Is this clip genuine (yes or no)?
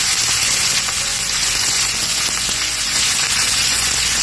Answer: no